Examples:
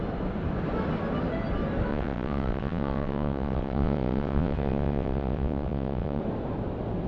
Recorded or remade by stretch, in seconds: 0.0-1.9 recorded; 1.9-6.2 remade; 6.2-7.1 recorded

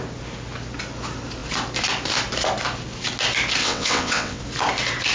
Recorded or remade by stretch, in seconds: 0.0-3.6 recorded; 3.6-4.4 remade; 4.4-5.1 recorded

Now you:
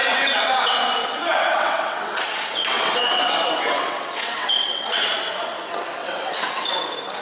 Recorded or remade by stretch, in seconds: 0.0-0.8 remade; 0.8-1.3 recorded; 1.3-5.1 remade; 5.1-6.0 recorded; 6.0-6.8 remade; 6.8-7.2 recorded